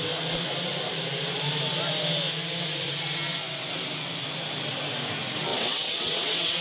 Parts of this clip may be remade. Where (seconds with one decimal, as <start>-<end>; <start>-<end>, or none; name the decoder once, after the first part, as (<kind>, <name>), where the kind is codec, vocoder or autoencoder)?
5.5-6.6 (vocoder, WaveNeXt)